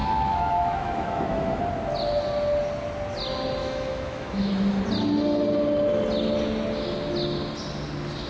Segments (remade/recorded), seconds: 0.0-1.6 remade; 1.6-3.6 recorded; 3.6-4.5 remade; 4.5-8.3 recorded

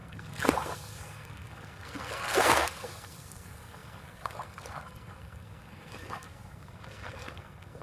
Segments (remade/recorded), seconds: 0.0-7.8 remade